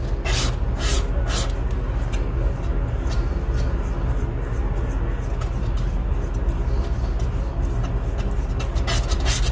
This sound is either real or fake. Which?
real